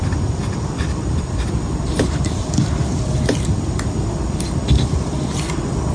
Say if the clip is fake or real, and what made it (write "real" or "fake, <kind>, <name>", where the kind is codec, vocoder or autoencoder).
real